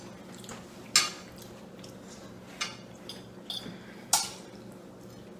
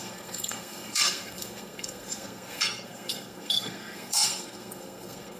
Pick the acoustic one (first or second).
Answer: first